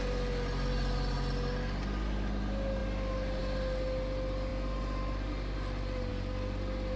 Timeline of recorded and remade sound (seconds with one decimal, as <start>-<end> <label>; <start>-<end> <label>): 0.0-7.0 recorded